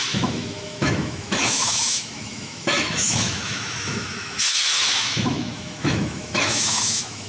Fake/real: fake